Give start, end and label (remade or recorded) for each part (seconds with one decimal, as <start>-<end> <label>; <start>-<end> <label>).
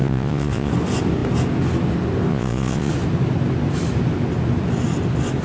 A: 0.0-0.7 remade; 0.7-2.3 recorded; 2.3-2.9 remade; 2.9-5.4 recorded